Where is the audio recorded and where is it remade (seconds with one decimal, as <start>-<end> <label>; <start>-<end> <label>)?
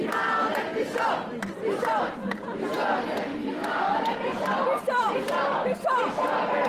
0.0-6.7 recorded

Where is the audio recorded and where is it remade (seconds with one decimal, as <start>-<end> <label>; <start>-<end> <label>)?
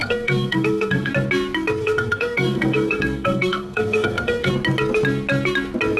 0.0-1.1 remade; 1.1-1.8 recorded; 1.8-4.5 remade; 4.5-6.0 recorded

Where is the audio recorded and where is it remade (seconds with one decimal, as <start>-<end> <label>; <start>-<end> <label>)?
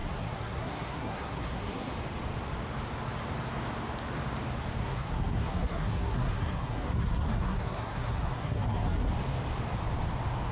0.0-1.9 remade; 1.9-4.8 recorded; 4.8-9.1 remade; 9.1-10.5 recorded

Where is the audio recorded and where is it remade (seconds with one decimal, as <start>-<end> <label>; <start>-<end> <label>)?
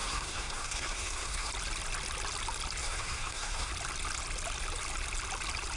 0.0-1.5 remade; 1.5-2.8 recorded; 2.8-3.7 remade; 3.7-5.8 recorded